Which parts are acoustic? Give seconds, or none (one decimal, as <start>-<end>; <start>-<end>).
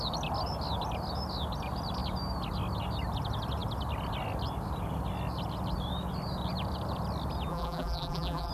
0.0-7.5